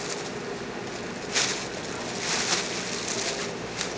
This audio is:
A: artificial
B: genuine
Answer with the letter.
B